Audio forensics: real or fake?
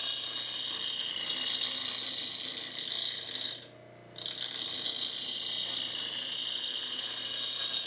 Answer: real